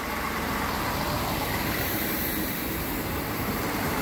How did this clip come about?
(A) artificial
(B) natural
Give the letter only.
A